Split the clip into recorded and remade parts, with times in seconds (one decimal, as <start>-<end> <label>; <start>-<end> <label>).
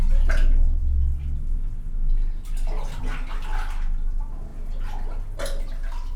0.0-6.2 recorded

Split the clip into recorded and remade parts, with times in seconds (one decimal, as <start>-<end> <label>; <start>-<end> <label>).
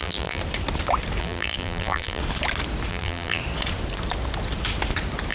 0.0-0.4 remade; 0.4-1.2 recorded; 1.2-2.2 remade; 2.2-2.9 recorded; 2.9-3.4 remade; 3.4-5.3 recorded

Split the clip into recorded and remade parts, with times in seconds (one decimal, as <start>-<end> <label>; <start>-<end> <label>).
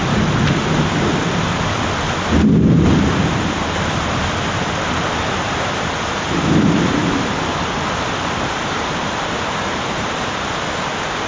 0.0-7.0 recorded; 7.0-10.1 remade; 10.1-11.3 recorded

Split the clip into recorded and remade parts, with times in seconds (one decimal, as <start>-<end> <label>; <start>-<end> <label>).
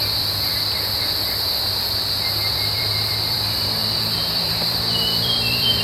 0.0-0.5 remade; 0.5-2.5 recorded; 2.5-5.8 remade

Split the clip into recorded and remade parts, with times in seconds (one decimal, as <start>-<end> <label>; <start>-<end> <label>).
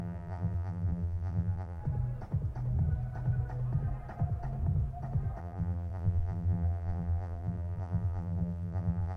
0.0-1.8 remade; 1.8-5.4 recorded; 5.4-9.2 remade